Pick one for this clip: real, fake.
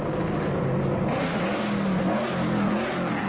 real